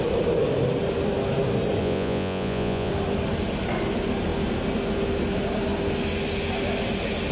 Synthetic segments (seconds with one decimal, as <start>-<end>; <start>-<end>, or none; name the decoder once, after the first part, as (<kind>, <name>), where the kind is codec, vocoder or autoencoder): 1.8-2.9 (vocoder, Vocos)